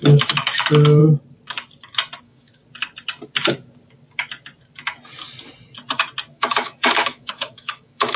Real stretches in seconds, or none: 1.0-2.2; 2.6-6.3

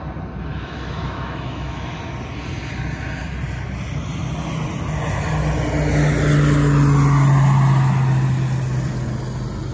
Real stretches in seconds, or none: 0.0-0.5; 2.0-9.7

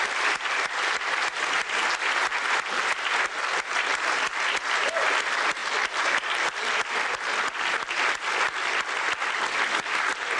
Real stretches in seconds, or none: 0.0-10.4